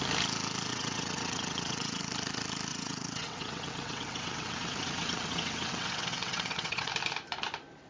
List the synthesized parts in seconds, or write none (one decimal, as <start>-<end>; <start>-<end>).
0.7-2.0; 2.7-6.9

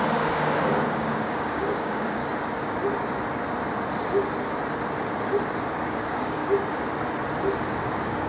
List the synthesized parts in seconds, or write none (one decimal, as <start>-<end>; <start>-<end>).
0.0-2.2; 5.7-6.4; 7.8-8.3

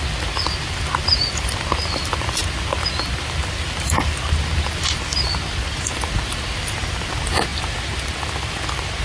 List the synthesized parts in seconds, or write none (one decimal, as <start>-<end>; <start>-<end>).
none

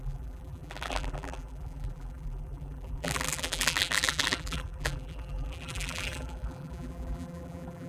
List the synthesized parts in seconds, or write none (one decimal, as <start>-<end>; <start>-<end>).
0.0-7.9

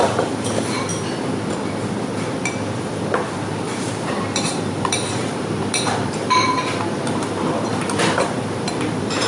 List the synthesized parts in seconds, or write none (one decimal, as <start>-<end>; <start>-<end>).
0.0-0.9; 3.8-9.3

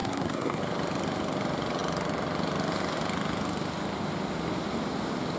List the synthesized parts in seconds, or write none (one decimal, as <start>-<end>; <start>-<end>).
0.0-0.6

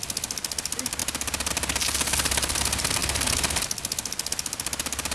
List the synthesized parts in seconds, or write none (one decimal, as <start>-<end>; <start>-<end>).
none